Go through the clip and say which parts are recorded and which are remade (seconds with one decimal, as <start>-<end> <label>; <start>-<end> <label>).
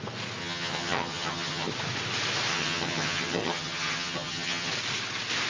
0.0-0.4 recorded; 0.4-1.7 remade; 1.7-2.5 recorded; 2.5-4.7 remade; 4.7-5.5 recorded